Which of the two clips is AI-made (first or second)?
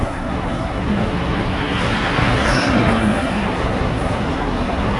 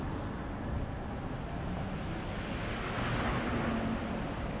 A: first